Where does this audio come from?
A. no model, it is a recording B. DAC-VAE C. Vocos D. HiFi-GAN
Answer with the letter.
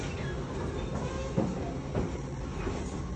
A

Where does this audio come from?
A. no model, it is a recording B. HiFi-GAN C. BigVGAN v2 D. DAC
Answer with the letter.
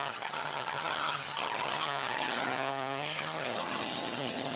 B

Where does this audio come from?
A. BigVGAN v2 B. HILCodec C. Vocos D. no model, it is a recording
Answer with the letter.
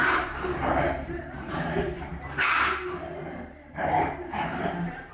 A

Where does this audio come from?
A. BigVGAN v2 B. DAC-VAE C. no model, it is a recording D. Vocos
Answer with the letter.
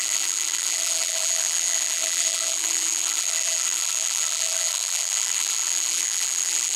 A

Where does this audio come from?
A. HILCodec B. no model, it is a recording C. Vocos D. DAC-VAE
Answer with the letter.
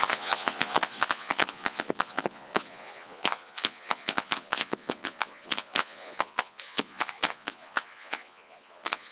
C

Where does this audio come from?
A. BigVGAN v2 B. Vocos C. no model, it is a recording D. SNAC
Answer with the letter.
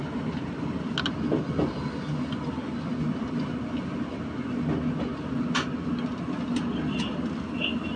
C